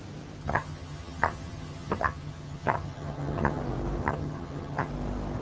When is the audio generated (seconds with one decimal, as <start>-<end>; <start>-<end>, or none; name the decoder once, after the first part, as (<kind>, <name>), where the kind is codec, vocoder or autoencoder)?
0.4-3.6 (vocoder, HiFi-GAN); 4.0-4.9